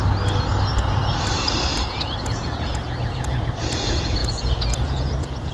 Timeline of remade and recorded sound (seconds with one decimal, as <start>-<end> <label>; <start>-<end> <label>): 0.0-1.7 recorded; 1.7-3.5 remade; 3.5-4.2 recorded; 4.2-5.5 remade